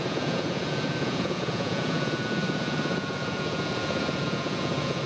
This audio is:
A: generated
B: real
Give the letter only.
A